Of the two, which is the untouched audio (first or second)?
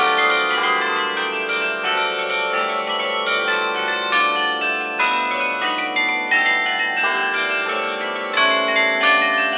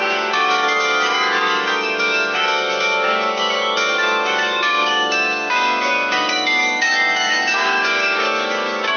first